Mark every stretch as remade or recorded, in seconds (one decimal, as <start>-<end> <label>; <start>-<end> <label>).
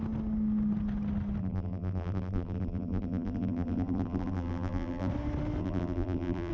0.0-1.4 recorded; 1.4-5.1 remade; 5.1-5.6 recorded; 5.6-6.5 remade